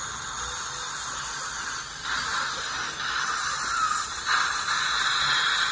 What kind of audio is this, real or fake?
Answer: real